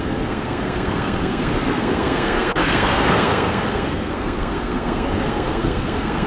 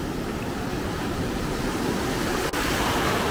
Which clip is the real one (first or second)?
second